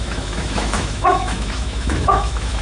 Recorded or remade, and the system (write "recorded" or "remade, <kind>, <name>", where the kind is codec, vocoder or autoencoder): remade, autoencoder, DAC-VAE